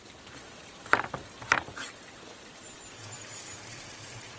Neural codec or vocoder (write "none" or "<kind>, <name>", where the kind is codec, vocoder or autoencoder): none